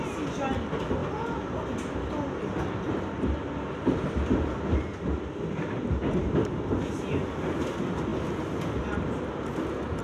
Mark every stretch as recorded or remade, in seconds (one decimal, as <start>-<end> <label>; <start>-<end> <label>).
0.0-10.0 recorded